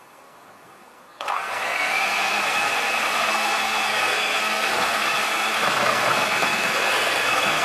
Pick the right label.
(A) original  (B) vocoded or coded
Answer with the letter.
B